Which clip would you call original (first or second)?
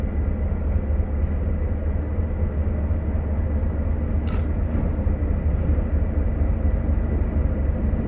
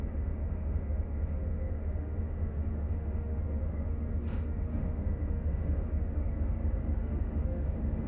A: first